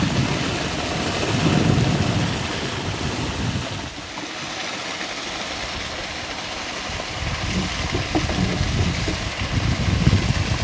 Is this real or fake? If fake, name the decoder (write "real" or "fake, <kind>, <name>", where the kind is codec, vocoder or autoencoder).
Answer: real